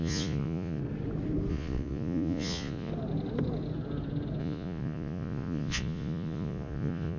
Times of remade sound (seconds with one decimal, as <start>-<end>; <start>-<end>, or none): 0.0-0.8; 1.5-2.9; 4.4-7.2